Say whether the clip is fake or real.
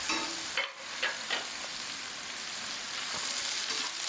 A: real